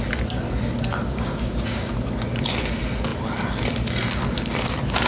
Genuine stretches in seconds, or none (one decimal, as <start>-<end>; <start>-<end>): 0.0-1.1; 1.9-5.1